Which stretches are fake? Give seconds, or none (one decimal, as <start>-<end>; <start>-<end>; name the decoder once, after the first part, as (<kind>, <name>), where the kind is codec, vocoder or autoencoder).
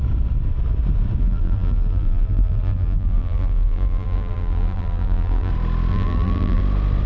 1.2-5.5 (vocoder, BigVGAN v2); 5.9-6.6